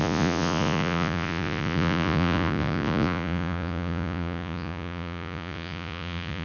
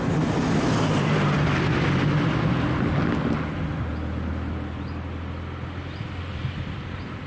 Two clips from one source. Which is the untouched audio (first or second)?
second